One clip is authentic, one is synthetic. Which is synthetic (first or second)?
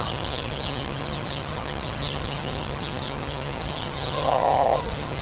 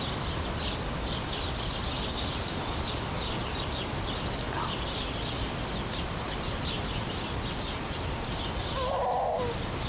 first